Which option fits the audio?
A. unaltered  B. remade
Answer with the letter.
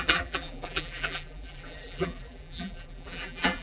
B